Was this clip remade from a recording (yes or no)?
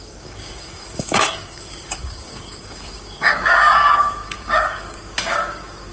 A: yes